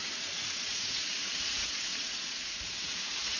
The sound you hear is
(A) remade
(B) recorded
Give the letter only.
A